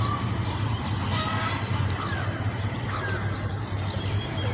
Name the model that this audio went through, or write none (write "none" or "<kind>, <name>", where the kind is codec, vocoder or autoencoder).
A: none